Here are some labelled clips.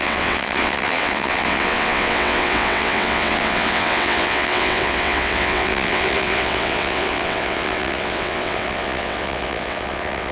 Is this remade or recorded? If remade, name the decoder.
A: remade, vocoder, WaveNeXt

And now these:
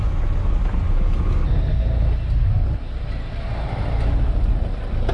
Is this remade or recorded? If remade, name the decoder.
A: recorded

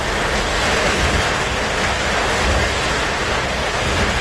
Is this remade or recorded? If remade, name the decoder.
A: recorded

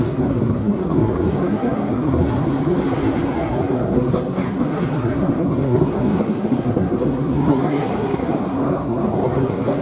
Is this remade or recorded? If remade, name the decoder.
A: remade, codec, SNAC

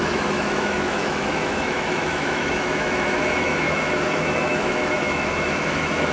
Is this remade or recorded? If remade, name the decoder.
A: remade, autoencoder, DAC-VAE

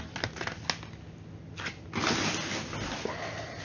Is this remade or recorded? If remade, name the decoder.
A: recorded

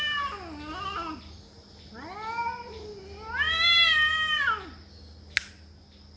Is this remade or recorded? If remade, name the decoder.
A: recorded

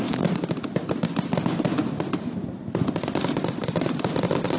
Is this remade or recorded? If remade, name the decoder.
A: recorded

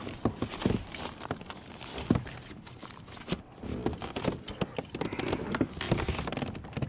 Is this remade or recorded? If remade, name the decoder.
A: recorded